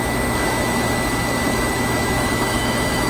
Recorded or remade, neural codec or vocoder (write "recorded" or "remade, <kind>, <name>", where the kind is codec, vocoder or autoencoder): remade, autoencoder, DAC-VAE